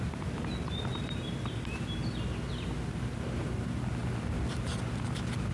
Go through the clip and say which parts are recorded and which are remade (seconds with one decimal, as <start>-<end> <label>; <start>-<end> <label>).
0.0-0.9 recorded; 0.9-1.8 remade; 1.8-4.0 recorded; 4.0-4.9 remade; 4.9-5.5 recorded